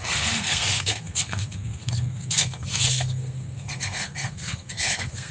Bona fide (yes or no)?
no